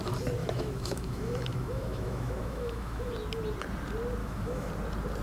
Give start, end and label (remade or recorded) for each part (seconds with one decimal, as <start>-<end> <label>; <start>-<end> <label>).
0.0-0.4 recorded; 0.4-3.1 remade; 3.1-4.2 recorded; 4.2-4.7 remade; 4.7-5.2 recorded